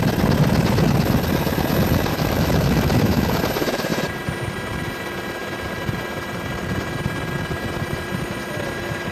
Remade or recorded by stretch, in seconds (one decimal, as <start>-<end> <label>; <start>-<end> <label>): 0.0-2.1 recorded; 2.1-3.4 remade; 3.4-9.1 recorded